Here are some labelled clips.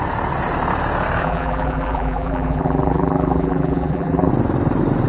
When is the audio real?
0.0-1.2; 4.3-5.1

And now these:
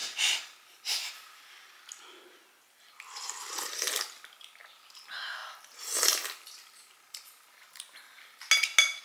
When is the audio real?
0.0-9.0